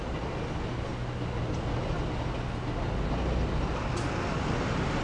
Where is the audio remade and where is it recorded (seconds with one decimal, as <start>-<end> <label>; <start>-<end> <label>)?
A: 0.0-5.0 recorded